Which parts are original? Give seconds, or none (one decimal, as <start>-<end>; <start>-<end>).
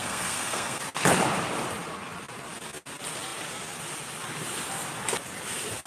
0.8-5.9